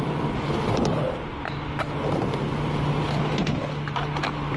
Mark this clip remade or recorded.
remade